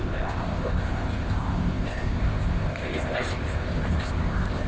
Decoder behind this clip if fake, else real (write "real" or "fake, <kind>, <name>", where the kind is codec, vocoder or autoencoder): fake, codec, ZipCodec